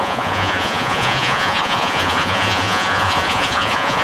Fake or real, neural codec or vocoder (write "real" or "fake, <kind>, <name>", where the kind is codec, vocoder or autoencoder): fake, vocoder, Vocos